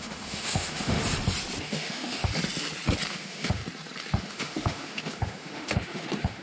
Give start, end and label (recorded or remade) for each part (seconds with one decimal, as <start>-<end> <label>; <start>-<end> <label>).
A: 0.0-1.0 remade; 1.0-1.6 recorded; 1.6-2.3 remade; 2.3-3.1 recorded; 3.1-3.6 remade; 3.6-4.2 recorded; 4.2-6.4 remade